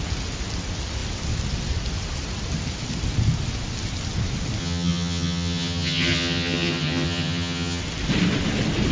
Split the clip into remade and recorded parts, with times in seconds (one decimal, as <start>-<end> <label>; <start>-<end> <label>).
0.0-4.6 recorded; 4.6-7.8 remade; 7.8-8.9 recorded